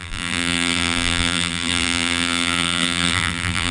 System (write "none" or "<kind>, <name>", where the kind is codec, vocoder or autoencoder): vocoder, BigVGAN v2